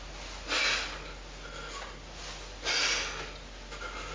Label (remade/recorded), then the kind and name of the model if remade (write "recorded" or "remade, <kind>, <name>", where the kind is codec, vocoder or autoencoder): recorded